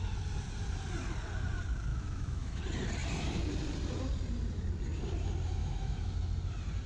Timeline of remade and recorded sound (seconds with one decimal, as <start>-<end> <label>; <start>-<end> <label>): 0.0-1.9 recorded; 1.9-2.6 remade; 2.6-5.6 recorded; 5.6-6.1 remade; 6.1-6.9 recorded